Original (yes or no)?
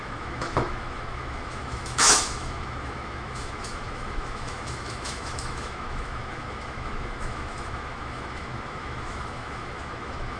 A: no